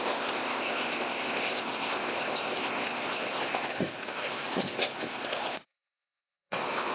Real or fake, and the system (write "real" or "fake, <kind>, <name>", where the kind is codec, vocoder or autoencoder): fake, codec, ZipCodec